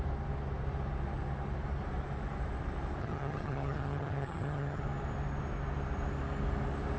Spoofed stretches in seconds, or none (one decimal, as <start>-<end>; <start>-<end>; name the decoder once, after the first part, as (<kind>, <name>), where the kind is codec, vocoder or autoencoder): 3.0-4.8 (vocoder, HiFi-GAN)